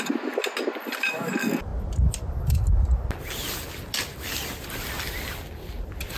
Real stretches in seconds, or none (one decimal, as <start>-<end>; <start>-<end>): 0.0-6.2